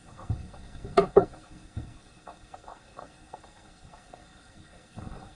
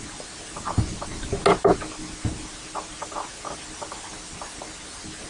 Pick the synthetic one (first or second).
first